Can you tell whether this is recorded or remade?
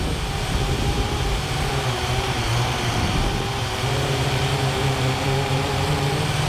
remade